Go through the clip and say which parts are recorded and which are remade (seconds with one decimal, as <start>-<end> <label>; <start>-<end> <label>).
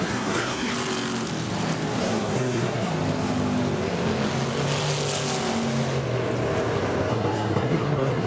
0.0-0.7 remade; 0.7-2.0 recorded; 2.0-2.9 remade; 2.9-7.1 recorded; 7.1-8.3 remade